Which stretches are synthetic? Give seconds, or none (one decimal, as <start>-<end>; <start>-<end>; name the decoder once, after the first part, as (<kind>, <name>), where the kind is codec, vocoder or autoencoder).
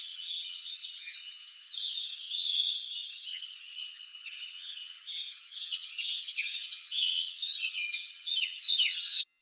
0.0-9.4 (vocoder, HiFi-GAN)